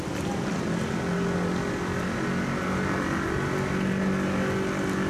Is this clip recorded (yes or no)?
yes